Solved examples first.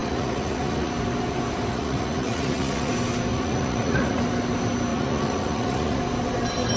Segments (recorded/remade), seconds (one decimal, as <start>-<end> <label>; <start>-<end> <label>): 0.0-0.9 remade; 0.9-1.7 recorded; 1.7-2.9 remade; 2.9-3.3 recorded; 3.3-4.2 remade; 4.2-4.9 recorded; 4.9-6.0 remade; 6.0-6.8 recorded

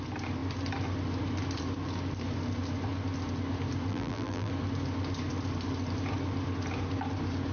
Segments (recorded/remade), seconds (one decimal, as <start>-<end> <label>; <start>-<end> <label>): 0.0-3.9 recorded; 3.9-4.5 remade; 4.5-7.5 recorded

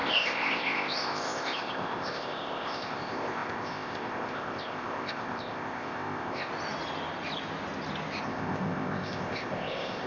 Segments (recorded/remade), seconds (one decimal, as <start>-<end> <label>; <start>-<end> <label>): 0.0-6.5 remade; 6.5-8.2 recorded; 8.2-10.1 remade

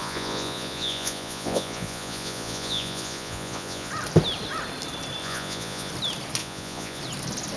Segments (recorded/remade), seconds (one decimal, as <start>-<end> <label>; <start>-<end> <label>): 0.0-3.9 remade; 3.9-5.2 recorded; 5.2-5.9 remade; 5.9-6.4 recorded; 6.4-7.0 remade; 7.0-7.6 recorded

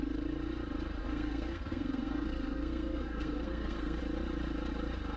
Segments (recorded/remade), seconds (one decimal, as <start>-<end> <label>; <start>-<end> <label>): 0.0-1.0 recorded; 1.0-4.0 remade; 4.0-5.2 recorded

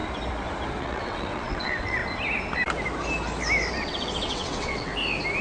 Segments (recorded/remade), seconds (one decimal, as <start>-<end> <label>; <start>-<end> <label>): 0.0-0.8 recorded; 0.8-2.0 remade; 2.0-3.7 recorded; 3.7-4.9 remade; 4.9-5.4 recorded

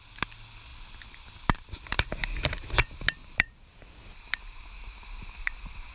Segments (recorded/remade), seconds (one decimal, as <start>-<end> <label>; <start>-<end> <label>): 0.0-0.7 recorded; 0.7-2.1 remade; 2.1-3.2 recorded; 3.2-4.4 remade; 4.4-5.9 recorded

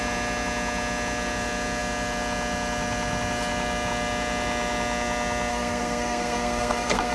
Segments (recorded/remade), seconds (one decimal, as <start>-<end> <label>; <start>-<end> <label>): 0.0-5.5 recorded; 5.5-7.1 remade